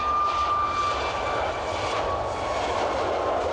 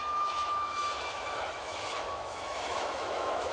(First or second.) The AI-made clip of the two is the second